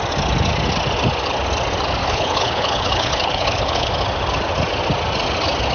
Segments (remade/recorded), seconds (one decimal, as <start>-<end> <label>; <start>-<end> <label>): 0.0-2.0 recorded; 2.0-3.9 remade; 3.9-5.7 recorded